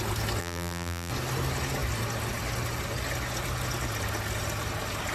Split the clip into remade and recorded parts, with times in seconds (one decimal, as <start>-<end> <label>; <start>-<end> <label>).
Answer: 0.0-0.4 recorded; 0.4-1.1 remade; 1.1-5.1 recorded